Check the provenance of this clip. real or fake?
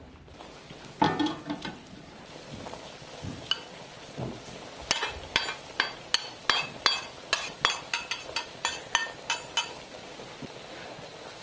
real